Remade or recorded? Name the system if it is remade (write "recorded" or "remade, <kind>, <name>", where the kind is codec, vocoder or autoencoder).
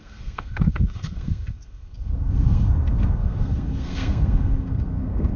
remade, codec, SNAC